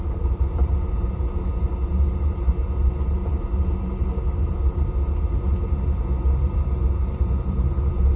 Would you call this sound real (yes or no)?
no